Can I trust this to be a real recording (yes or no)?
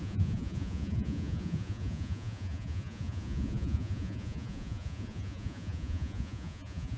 no